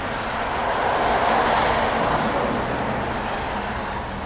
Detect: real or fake real